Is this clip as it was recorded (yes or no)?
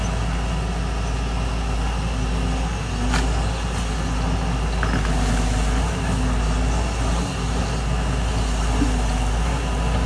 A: yes